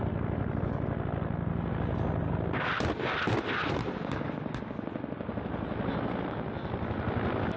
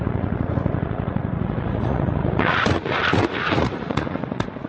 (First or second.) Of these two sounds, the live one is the first